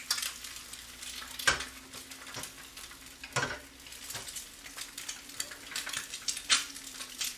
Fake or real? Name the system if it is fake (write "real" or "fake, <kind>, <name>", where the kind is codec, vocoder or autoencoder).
real